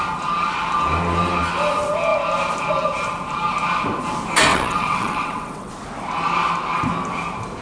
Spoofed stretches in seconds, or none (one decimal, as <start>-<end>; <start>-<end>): 4.5-5.7